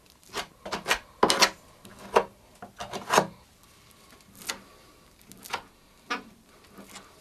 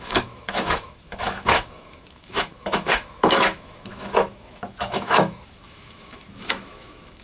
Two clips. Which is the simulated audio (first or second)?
second